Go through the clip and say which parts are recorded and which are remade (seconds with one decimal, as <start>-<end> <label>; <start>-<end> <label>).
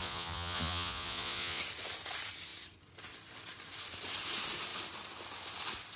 0.0-1.6 remade; 1.6-6.0 recorded